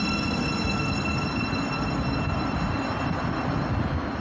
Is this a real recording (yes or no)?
yes